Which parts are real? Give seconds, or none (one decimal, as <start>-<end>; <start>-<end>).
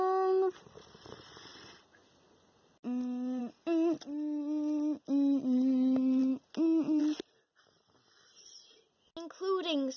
0.0-10.0